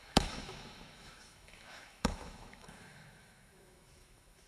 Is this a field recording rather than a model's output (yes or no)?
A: no